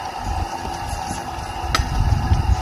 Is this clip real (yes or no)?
yes